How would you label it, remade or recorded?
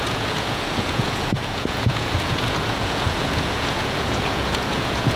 remade